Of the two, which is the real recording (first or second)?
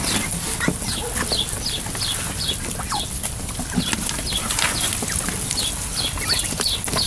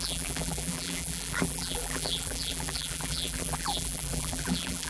first